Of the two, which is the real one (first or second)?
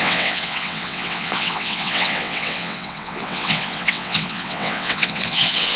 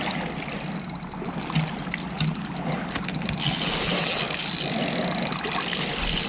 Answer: second